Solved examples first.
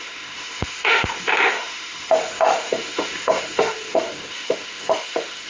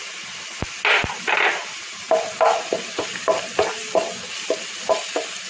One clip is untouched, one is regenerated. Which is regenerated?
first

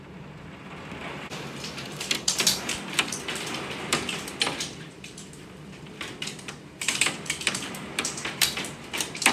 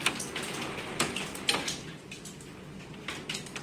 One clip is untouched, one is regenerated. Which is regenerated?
first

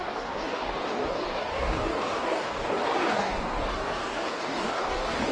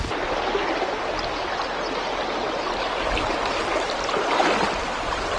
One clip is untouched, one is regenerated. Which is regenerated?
first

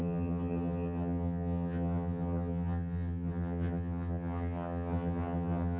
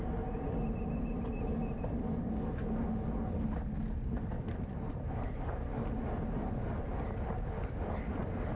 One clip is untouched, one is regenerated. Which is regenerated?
first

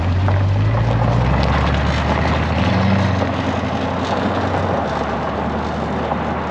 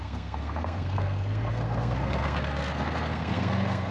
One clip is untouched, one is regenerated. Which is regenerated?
second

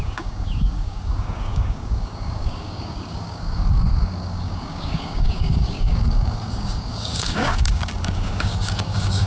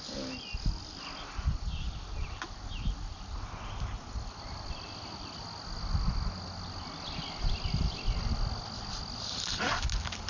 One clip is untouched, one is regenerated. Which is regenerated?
first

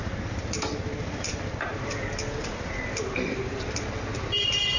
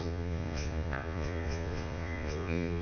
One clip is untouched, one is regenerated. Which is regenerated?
second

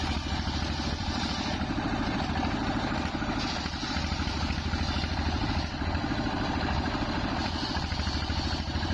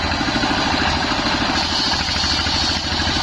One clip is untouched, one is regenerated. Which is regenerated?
first